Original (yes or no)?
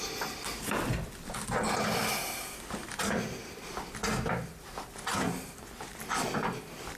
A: yes